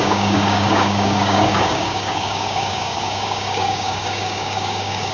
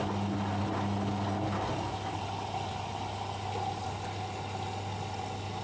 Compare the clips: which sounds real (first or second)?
second